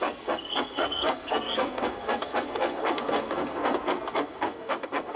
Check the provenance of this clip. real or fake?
fake